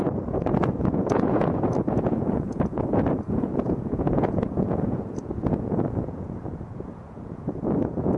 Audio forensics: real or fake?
fake